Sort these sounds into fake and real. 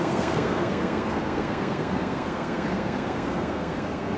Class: fake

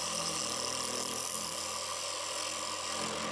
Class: real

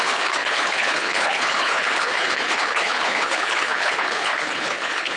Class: fake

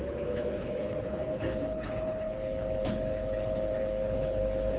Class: fake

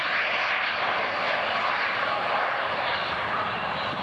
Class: fake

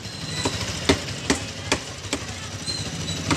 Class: real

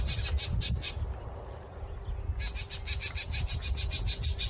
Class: real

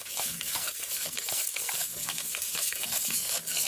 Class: fake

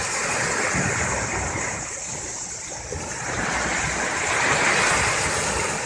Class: real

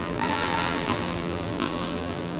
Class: fake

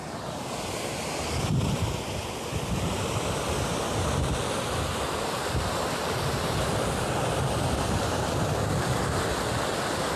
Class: real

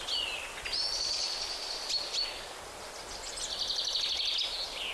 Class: real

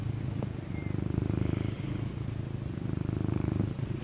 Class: real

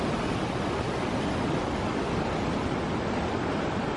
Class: real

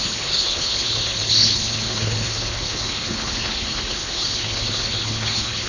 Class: fake